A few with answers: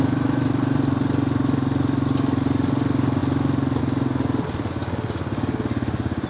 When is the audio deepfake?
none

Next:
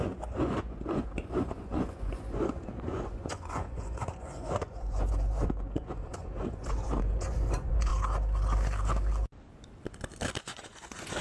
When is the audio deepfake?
0.0-7.9; 10.4-11.2

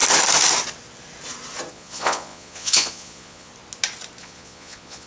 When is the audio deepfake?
1.7-3.5; 4.2-5.1

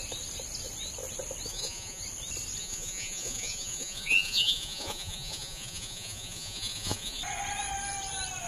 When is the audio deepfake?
1.5-2.0; 2.6-7.2

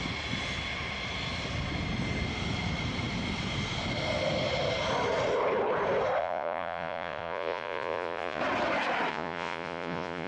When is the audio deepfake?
6.2-8.4; 9.1-10.3